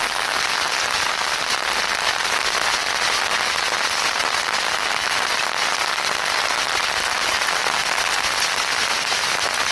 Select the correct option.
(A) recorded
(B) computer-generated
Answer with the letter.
A